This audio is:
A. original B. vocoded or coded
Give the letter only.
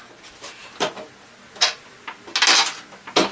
A